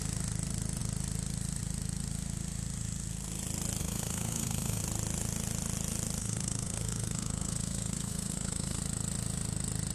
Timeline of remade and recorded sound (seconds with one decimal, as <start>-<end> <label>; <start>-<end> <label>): 0.0-3.8 recorded; 3.8-4.8 remade; 4.8-6.2 recorded; 6.2-8.8 remade; 8.8-9.9 recorded